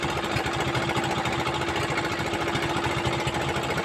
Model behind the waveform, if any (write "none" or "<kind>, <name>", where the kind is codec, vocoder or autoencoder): none